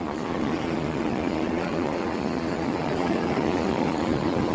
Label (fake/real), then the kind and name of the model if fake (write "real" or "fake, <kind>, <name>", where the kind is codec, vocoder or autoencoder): fake, vocoder, Vocos